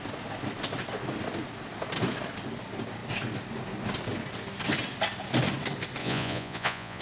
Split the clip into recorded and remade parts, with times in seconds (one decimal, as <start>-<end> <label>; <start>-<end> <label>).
0.0-6.0 recorded; 6.0-7.0 remade